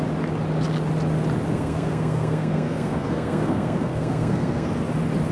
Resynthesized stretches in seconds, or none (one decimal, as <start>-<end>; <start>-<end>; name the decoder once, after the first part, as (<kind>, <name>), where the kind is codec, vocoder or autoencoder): 1.5-4.7 (codec, SNAC)